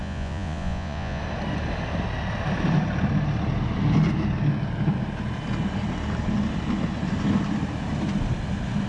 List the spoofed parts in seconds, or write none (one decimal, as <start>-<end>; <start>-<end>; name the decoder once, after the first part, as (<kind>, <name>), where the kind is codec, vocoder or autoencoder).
0.0-1.2 (vocoder, Vocos)